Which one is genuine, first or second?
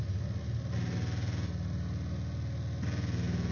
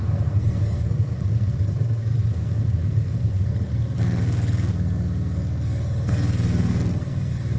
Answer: first